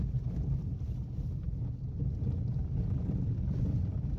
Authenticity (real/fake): real